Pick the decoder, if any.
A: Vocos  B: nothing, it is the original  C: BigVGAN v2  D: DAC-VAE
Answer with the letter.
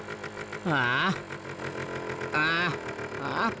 B